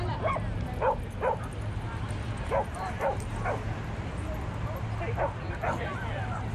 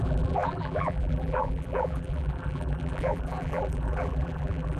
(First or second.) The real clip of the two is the first